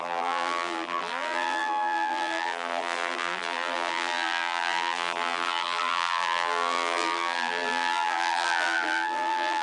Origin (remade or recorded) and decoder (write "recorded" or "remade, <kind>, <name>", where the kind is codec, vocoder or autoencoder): remade, vocoder, BigVGAN v2